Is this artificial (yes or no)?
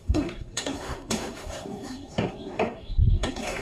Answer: yes